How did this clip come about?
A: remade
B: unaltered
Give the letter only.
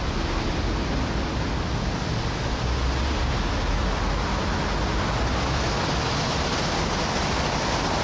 B